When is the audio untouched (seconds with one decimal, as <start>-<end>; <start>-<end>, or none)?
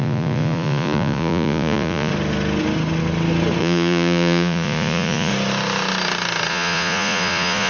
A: 2.1-3.6; 5.3-6.5